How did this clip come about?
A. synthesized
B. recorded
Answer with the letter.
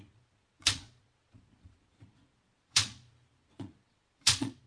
A